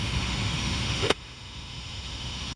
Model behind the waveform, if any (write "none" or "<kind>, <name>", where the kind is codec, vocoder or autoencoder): autoencoder, DAC-VAE